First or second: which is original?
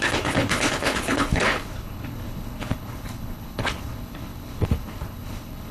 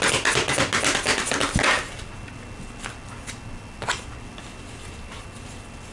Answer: second